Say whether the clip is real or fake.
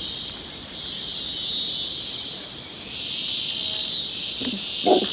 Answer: real